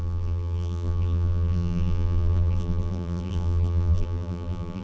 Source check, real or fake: fake